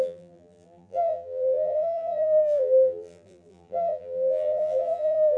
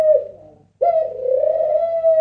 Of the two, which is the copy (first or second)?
first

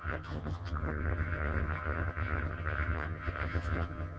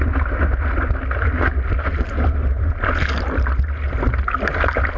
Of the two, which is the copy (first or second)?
first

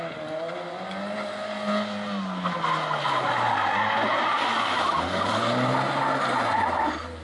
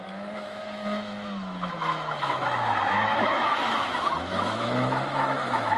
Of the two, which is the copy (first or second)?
second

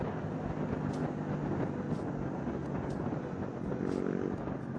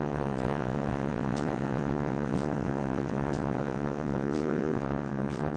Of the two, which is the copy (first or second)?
second